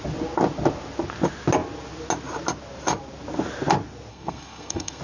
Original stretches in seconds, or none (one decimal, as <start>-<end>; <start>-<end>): 0.0-4.1